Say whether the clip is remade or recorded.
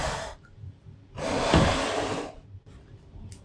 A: recorded